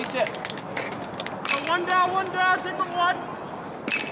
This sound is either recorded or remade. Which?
recorded